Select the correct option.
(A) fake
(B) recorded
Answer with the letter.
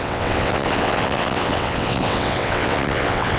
A